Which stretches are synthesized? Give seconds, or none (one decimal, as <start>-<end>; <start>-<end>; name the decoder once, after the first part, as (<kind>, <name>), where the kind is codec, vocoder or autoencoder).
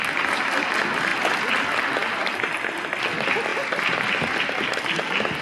none